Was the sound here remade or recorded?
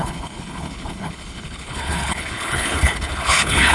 remade